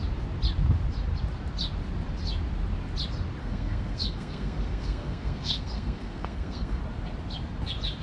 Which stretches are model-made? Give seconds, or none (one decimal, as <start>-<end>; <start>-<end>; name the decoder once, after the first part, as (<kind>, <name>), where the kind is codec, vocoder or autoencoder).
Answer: 3.4-6.8 (codec, SNAC)